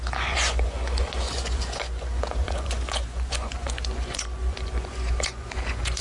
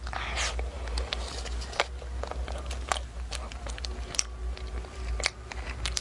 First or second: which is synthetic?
first